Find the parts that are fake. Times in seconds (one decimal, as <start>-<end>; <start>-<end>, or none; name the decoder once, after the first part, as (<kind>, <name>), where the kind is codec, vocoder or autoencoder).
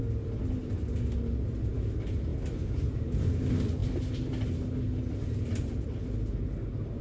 none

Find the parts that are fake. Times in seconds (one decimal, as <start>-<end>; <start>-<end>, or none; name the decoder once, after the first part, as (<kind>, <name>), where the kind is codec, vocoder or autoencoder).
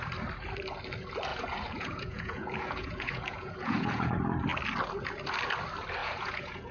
1.3-4.1 (vocoder, Vocos); 6.0-6.7